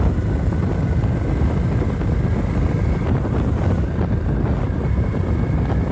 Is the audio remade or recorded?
recorded